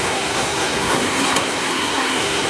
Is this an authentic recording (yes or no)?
no